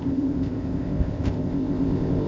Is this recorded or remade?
remade